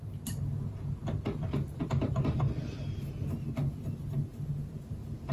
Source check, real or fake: real